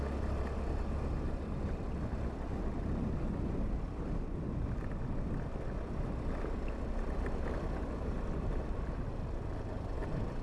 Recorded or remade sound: recorded